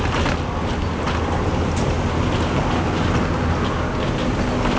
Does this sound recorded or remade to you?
recorded